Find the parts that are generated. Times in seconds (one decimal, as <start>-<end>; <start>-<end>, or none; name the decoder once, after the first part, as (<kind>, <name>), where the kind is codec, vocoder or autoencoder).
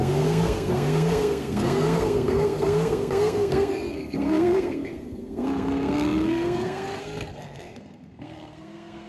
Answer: 0.0-9.1 (codec, SNAC)